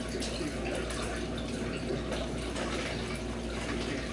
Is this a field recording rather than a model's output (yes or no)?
yes